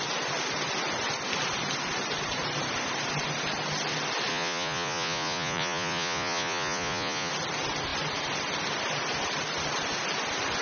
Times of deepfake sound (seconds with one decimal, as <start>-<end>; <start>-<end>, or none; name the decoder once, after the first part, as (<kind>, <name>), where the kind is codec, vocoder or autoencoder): 4.3-7.3 (vocoder, Vocos)

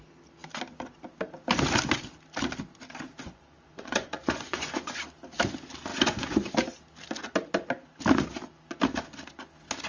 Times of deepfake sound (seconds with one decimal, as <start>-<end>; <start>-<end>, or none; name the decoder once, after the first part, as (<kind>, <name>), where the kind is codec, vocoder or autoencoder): 3.2-5.0 (vocoder, Vocos); 5.9-6.5

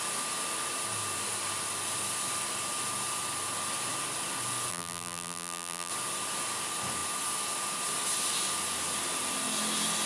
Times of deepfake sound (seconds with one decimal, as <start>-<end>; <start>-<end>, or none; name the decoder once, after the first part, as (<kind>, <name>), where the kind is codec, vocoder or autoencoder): 4.7-5.9 (vocoder, BigVGAN v2)

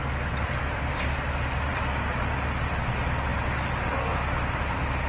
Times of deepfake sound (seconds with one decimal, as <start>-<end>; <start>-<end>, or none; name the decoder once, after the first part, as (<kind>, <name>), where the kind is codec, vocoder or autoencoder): none

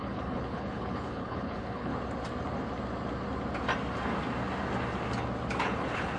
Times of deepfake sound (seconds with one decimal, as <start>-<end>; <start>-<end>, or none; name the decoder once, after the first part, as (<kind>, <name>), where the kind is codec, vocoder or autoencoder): 0.0-1.9 (codec, HILCodec); 5.6-6.2

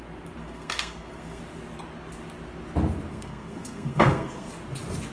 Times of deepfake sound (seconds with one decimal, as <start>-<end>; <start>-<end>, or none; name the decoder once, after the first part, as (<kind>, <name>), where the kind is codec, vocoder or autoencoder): 0.4-1.4 (codec, SNAC); 3.1-4.5